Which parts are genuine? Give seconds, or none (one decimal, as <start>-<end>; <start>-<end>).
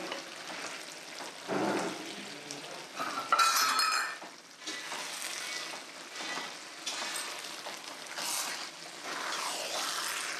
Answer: 0.0-10.4